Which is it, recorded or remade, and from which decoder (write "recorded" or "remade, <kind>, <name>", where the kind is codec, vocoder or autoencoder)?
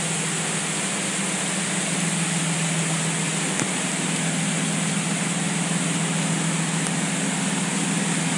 recorded